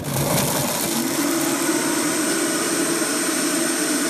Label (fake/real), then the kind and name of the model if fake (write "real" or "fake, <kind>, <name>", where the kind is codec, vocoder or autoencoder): real